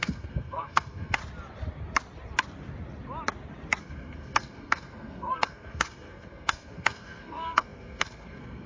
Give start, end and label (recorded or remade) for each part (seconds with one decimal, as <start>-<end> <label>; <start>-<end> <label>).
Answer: 0.0-1.2 remade; 1.2-3.8 recorded; 3.8-8.7 remade